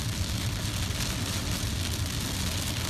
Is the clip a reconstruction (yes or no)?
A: no